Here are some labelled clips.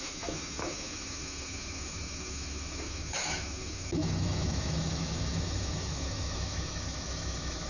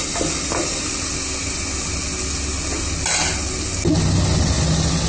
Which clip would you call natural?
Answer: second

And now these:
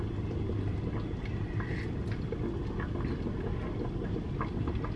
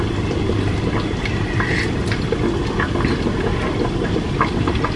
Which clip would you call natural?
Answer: first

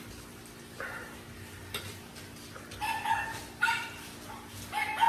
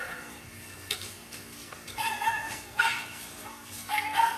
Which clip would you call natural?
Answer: first